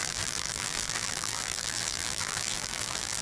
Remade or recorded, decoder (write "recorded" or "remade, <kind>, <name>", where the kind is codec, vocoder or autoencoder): remade, vocoder, BigVGAN v2